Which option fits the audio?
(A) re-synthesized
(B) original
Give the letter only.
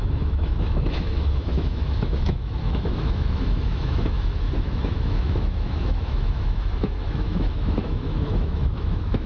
A